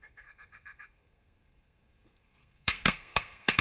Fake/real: fake